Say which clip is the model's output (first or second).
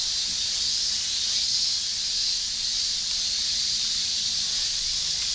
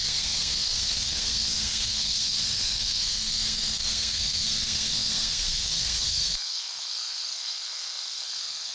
second